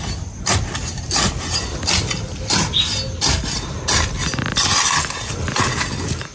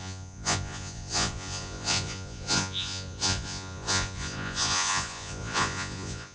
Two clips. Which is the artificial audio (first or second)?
second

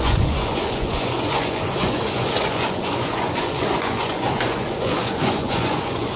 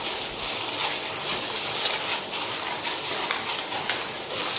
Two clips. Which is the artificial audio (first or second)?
first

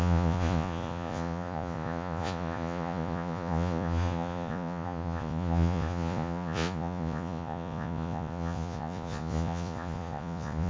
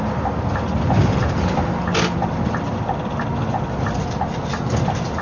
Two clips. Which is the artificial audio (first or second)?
first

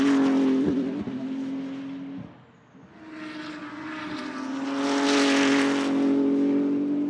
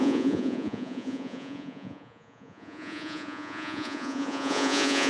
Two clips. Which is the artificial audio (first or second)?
second